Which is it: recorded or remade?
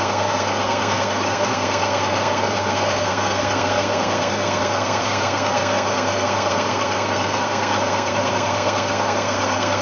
remade